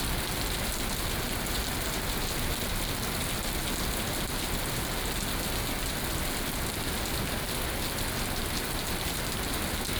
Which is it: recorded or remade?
recorded